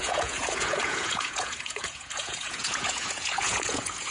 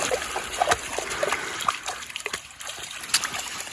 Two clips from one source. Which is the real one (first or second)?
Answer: second